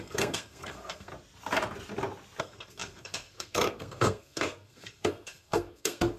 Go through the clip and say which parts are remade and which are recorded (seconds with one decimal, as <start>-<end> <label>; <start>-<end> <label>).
0.0-1.1 remade; 1.1-2.4 recorded; 2.4-6.2 remade

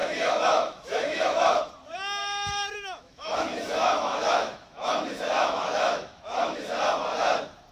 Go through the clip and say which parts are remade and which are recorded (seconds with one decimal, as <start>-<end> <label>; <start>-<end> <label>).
0.0-1.7 remade; 1.7-2.2 recorded; 2.2-6.8 remade; 6.8-7.7 recorded

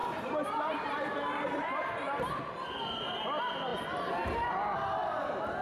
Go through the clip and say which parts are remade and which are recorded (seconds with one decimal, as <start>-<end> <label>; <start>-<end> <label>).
0.0-2.4 remade; 2.4-5.6 recorded

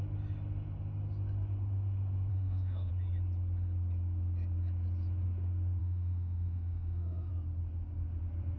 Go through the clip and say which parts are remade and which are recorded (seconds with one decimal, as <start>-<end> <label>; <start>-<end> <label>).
0.0-2.3 recorded; 2.3-2.9 remade; 2.9-5.8 recorded; 5.8-7.3 remade; 7.3-8.6 recorded

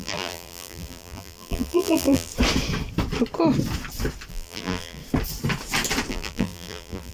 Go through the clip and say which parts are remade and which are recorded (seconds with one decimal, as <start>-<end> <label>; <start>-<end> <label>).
0.0-2.3 remade; 2.3-4.3 recorded; 4.3-5.0 remade; 5.0-6.1 recorded; 6.1-7.1 remade

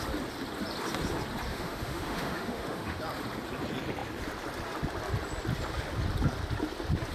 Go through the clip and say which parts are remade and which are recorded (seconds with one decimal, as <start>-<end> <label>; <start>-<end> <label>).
0.0-1.5 recorded; 1.5-3.0 remade; 3.0-7.1 recorded

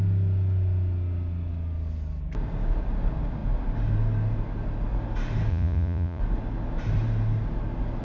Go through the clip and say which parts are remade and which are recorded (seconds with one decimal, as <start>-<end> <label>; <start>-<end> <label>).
0.0-5.5 recorded; 5.5-6.2 remade; 6.2-8.0 recorded